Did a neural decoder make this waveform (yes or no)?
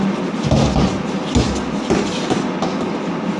no